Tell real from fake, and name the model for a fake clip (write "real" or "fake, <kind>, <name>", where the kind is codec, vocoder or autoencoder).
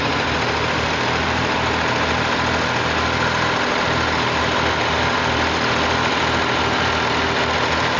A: real